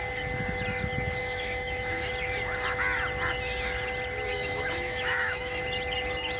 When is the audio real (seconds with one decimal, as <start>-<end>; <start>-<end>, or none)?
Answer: 0.0-1.2; 2.1-4.3; 5.6-6.4